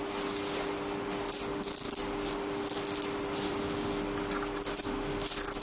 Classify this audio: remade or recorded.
recorded